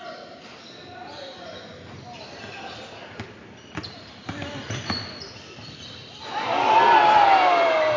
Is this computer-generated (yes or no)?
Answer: no